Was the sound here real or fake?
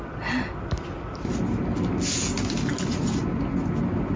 real